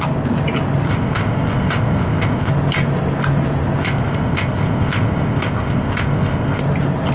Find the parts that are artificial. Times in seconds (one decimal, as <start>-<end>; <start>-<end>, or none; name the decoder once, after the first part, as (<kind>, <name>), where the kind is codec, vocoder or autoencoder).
0.9-2.5 (codec, ZipCodec); 3.8-6.6